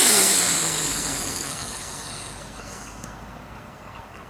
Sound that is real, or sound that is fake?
fake